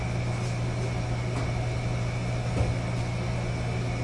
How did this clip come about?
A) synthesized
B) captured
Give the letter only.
B